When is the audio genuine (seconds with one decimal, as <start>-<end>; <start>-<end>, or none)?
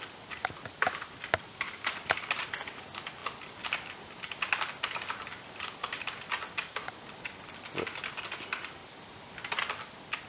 0.0-8.8; 9.3-10.3